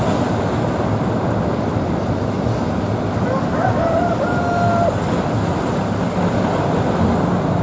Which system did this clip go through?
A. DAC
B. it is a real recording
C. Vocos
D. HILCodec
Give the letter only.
B